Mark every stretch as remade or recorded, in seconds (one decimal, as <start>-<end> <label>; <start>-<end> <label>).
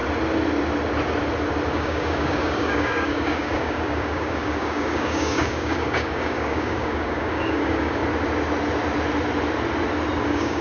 0.0-1.7 recorded; 1.7-8.0 remade; 8.0-10.2 recorded; 10.2-10.6 remade